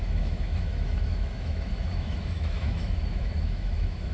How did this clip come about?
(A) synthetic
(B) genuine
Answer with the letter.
A